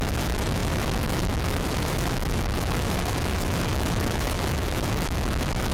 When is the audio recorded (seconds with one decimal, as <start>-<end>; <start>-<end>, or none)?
none